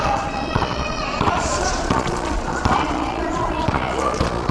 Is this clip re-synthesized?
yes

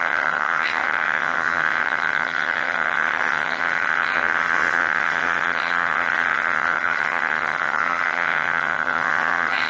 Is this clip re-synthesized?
yes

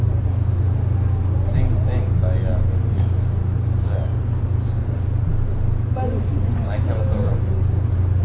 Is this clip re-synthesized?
no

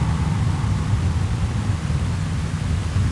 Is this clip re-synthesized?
no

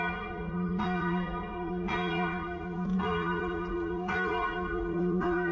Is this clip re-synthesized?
yes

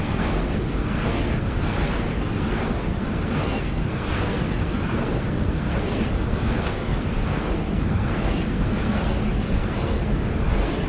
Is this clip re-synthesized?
yes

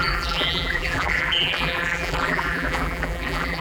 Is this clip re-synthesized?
yes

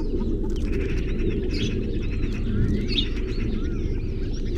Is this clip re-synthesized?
no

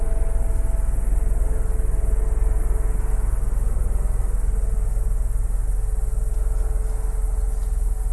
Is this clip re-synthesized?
no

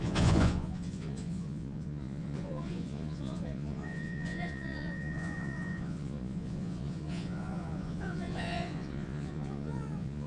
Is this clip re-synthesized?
yes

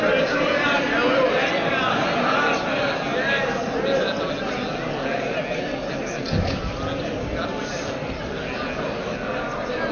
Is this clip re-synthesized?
no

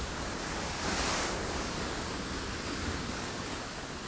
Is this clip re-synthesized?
yes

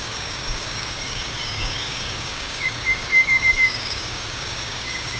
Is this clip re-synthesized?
yes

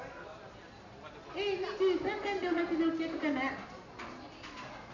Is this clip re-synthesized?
no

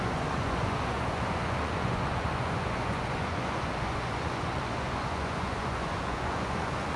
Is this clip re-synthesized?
yes